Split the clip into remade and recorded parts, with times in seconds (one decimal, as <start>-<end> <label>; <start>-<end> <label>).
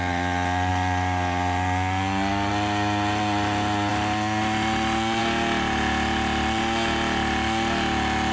0.0-8.3 recorded